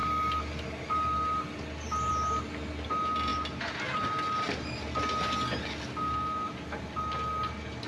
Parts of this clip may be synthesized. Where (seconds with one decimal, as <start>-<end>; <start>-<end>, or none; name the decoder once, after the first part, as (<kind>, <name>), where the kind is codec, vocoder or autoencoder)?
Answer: none